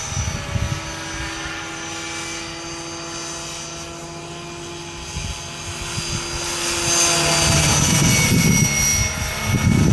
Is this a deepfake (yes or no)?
no